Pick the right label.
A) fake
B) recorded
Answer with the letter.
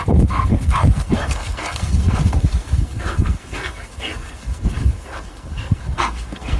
A